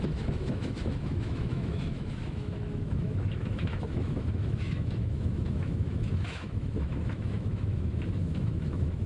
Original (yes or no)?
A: no